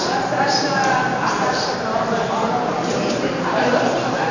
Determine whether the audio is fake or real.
fake